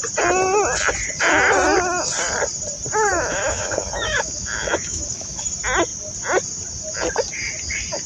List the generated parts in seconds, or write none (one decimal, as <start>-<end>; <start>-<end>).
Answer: 3.1-5.5